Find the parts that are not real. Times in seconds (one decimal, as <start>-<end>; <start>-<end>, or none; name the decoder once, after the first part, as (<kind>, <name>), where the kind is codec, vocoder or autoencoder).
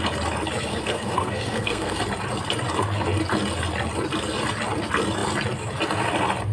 0.7-2.0 (codec, SNAC)